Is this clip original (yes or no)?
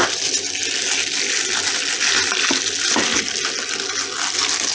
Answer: yes